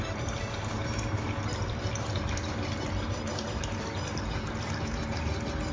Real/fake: fake